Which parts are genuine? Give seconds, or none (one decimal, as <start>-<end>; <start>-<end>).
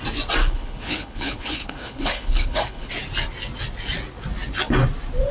0.0-0.4; 2.9-5.3